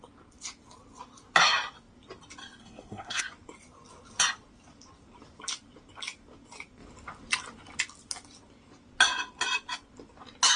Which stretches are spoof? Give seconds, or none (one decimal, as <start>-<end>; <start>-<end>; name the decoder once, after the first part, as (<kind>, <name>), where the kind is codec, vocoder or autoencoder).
2.6-3.2 (codec, SNAC)